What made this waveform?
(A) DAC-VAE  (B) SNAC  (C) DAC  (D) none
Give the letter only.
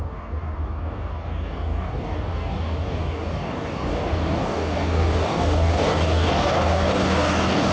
C